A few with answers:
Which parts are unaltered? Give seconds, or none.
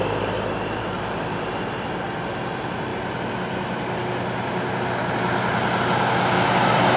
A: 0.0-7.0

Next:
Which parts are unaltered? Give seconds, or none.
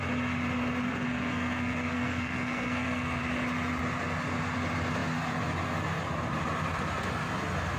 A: 0.0-0.9; 3.2-7.8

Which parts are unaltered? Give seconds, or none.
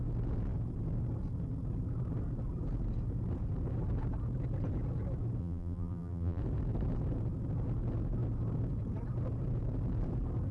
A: 0.0-5.4; 6.4-10.5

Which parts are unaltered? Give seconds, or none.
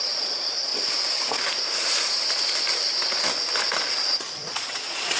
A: 0.7-3.8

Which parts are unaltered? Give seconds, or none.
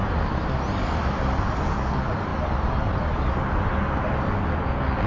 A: 0.0-5.1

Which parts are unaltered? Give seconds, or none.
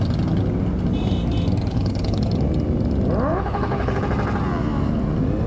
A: 0.0-1.7; 2.3-3.3; 4.0-5.5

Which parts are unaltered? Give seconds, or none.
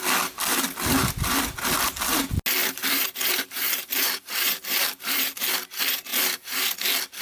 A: 0.0-2.6; 5.5-6.1; 6.7-7.2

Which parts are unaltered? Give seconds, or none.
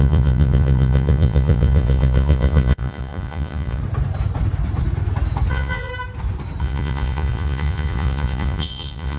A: 3.8-5.5; 5.9-6.6